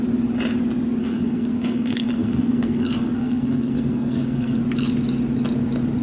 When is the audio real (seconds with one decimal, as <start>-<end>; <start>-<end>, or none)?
0.0-1.0; 4.6-6.0